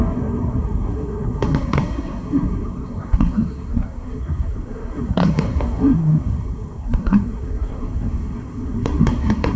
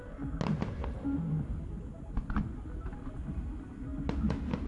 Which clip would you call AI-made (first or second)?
first